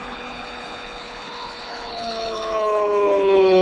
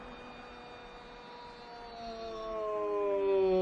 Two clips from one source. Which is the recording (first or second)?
second